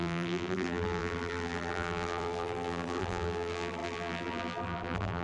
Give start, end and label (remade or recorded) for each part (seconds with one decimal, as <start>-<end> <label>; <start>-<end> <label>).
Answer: 0.0-5.2 remade